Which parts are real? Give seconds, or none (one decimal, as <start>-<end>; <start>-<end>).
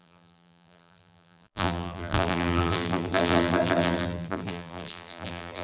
none